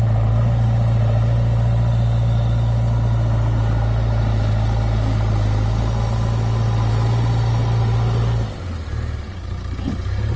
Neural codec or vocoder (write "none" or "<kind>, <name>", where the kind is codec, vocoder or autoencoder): none